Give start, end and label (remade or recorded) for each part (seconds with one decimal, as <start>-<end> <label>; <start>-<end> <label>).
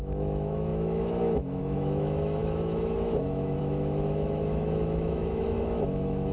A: 0.0-6.3 remade